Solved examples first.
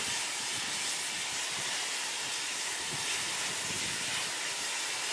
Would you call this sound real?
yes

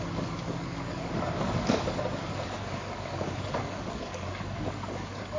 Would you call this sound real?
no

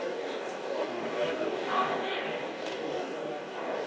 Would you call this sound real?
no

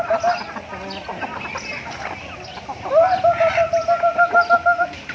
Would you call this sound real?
yes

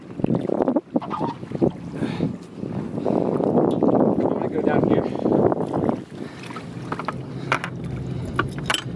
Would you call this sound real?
yes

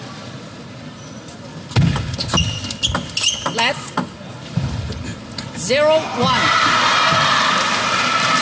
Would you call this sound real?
yes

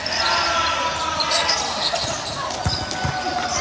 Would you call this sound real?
yes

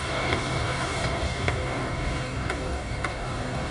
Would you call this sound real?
no